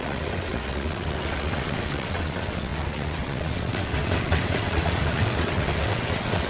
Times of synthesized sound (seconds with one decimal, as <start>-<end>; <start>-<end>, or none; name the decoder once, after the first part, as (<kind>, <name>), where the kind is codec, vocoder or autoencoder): 0.0-6.5 (vocoder, WaveNeXt)